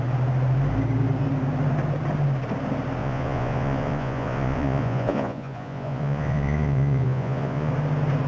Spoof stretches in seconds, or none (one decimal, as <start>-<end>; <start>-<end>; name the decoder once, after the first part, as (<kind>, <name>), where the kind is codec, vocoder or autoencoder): 3.0-7.7 (vocoder, Vocos)